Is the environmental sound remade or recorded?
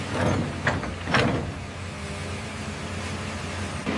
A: recorded